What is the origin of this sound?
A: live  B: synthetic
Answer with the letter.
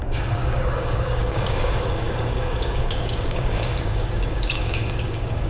B